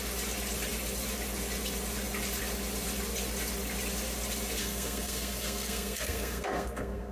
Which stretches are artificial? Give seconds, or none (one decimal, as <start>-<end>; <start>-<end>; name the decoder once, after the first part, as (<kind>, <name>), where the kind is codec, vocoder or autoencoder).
4.6-7.1 (codec, SNAC)